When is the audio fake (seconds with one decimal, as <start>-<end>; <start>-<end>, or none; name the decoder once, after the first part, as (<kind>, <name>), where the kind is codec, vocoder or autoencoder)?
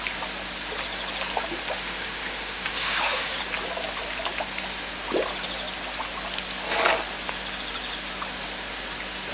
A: 1.8-3.4 (autoencoder, DAC-VAE)